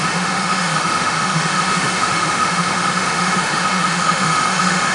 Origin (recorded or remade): remade